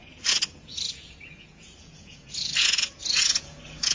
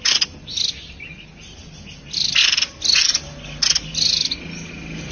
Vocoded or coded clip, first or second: first